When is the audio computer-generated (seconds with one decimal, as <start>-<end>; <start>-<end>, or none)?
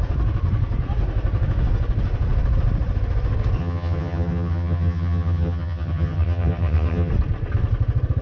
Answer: 3.6-7.1